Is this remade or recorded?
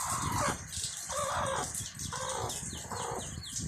recorded